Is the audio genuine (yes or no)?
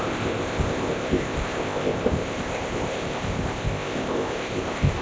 no